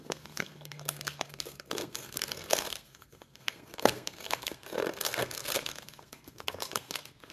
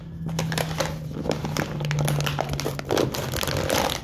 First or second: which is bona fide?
second